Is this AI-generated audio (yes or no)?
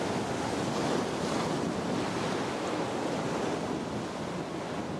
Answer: no